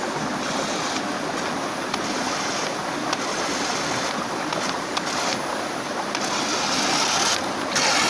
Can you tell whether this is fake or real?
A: real